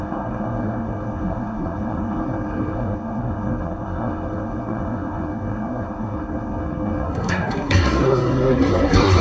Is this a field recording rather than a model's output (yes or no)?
no